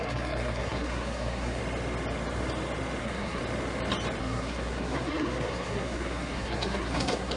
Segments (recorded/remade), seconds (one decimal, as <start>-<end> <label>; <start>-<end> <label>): 0.0-1.6 remade; 1.6-3.0 recorded; 3.0-3.4 remade; 3.4-4.2 recorded; 4.2-7.4 remade